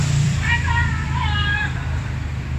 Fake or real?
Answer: fake